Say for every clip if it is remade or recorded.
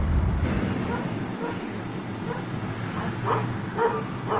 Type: recorded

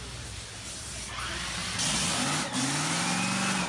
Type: recorded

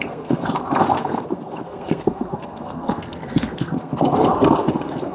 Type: remade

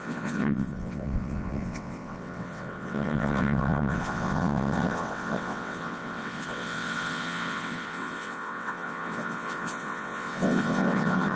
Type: remade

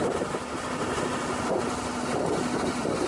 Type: recorded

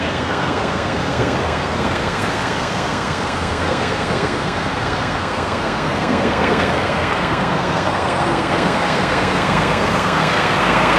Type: remade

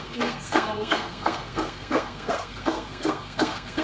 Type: remade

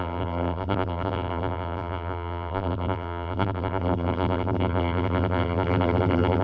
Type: remade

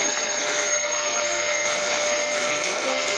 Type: remade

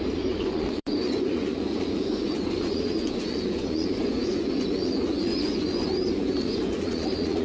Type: remade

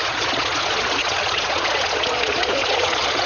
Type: remade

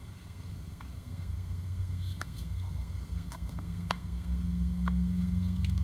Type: remade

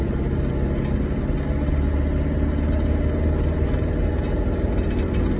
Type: recorded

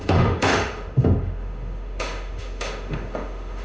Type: remade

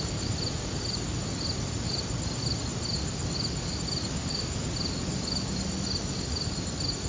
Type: recorded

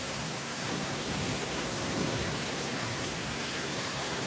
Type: remade